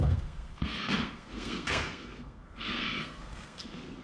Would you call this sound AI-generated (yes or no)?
yes